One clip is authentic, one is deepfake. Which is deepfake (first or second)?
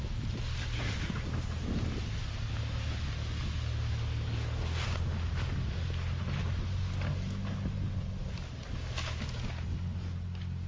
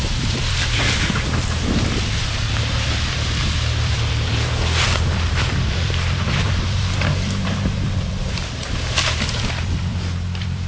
second